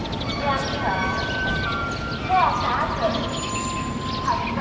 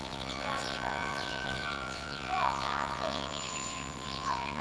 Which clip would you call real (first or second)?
first